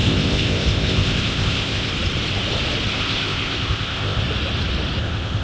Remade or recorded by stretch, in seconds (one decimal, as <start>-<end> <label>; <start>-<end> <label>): 0.0-1.9 remade; 1.9-2.9 recorded; 2.9-4.2 remade; 4.2-5.0 recorded; 5.0-5.4 remade